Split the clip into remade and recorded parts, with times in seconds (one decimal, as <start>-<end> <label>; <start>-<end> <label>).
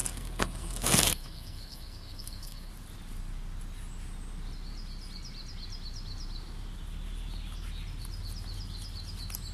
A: 0.0-2.7 remade; 2.7-9.5 recorded